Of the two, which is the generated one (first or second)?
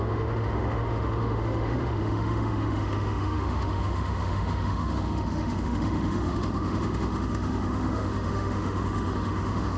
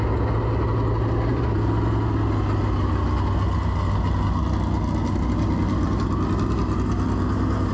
first